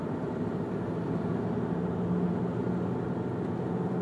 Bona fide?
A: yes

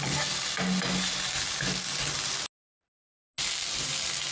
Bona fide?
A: yes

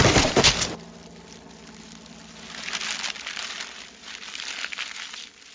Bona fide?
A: yes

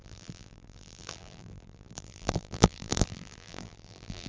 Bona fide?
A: no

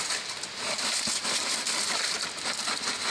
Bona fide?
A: yes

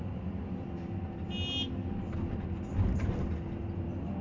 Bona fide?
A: yes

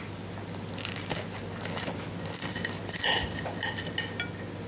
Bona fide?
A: yes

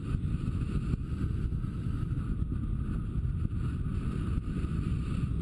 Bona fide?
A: yes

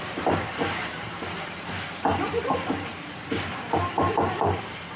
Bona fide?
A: no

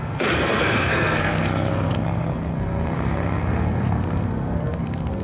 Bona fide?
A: no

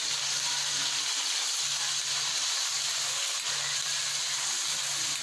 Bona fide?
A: yes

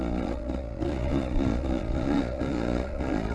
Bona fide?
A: no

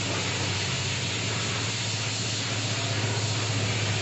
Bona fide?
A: yes